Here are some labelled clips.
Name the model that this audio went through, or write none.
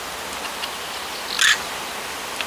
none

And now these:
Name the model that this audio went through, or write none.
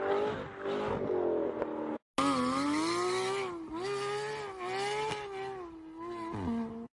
none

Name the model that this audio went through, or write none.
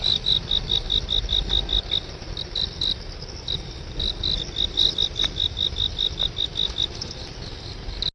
none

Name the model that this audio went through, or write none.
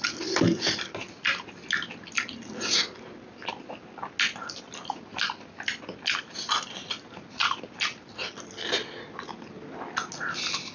none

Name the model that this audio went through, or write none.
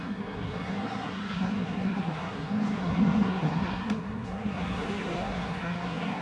codec, SNAC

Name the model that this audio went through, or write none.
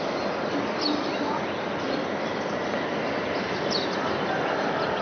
none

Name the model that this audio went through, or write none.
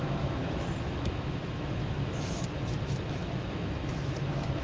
autoencoder, DAC-VAE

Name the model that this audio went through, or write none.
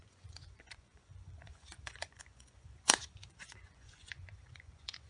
vocoder, Vocos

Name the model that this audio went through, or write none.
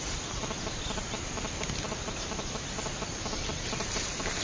none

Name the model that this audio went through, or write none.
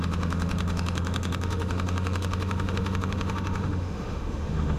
autoencoder, DAC-VAE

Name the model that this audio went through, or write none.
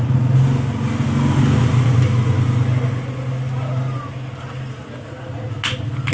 none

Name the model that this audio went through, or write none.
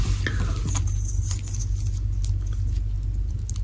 none